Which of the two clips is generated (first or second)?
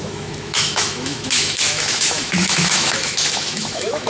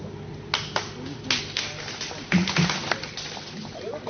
first